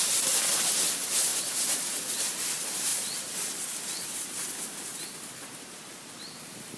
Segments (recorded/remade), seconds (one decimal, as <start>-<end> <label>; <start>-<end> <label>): 0.0-1.3 recorded; 1.3-2.0 remade; 2.0-6.8 recorded